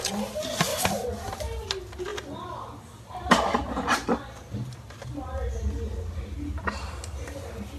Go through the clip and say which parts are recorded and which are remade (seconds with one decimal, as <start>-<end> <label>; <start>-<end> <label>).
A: 0.0-7.8 recorded